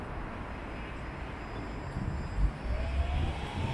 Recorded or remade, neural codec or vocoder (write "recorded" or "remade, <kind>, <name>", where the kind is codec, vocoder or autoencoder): recorded